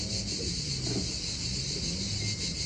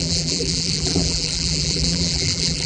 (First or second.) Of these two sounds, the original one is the first